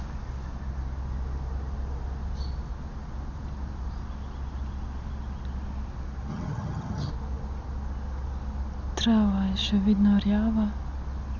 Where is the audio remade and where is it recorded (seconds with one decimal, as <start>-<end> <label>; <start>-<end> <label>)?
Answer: 0.0-6.3 recorded; 6.3-7.1 remade; 7.1-11.4 recorded